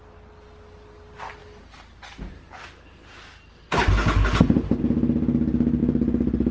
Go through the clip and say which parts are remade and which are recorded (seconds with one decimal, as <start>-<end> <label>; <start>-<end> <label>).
0.0-6.5 recorded